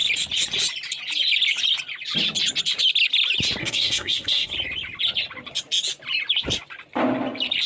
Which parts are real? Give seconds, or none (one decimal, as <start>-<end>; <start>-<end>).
0.0-3.6; 4.5-7.7